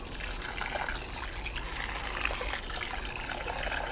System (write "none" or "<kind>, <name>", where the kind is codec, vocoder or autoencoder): none